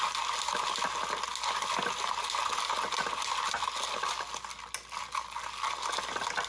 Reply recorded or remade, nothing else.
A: recorded